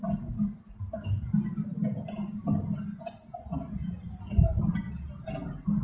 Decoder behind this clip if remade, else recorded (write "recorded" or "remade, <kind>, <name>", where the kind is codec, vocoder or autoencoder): recorded